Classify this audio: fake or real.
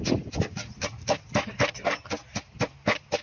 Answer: real